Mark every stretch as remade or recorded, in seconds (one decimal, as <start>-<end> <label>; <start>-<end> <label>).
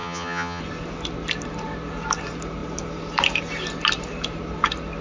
0.0-0.6 remade; 0.6-5.0 recorded